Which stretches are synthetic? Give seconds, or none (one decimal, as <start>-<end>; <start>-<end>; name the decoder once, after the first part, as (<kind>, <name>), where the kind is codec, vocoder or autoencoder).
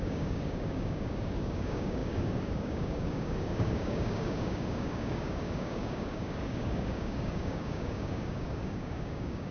0.0-9.5 (codec, DAC)